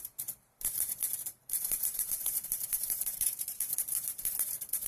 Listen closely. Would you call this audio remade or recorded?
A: remade